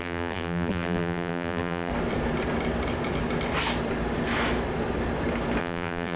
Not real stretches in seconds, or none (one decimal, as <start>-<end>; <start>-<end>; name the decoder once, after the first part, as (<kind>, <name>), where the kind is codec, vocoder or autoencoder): 0.0-1.9 (vocoder, BigVGAN v2); 5.6-6.2